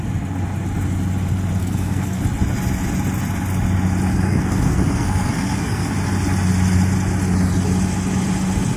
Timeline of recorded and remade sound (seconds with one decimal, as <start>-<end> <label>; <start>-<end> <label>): 0.0-1.6 recorded; 1.6-2.2 remade; 2.2-4.1 recorded; 4.1-5.9 remade; 5.9-8.8 recorded